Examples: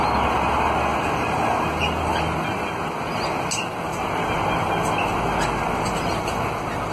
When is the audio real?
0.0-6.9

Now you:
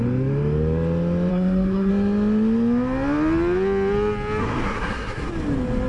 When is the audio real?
0.0-1.3; 1.9-4.4; 5.3-5.9